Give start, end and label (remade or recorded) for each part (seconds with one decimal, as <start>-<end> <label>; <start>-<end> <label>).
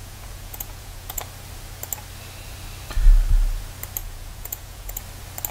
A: 0.0-1.2 remade; 1.2-4.0 recorded; 4.0-5.0 remade; 5.0-5.5 recorded